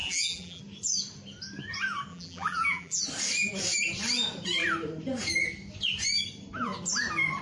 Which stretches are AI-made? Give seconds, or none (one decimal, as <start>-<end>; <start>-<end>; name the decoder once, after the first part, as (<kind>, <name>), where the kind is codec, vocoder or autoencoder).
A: 0.0-0.6 (vocoder, BigVGAN v2); 2.1-3.0